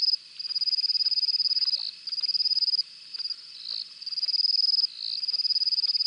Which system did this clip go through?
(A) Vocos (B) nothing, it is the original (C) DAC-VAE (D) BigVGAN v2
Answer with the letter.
B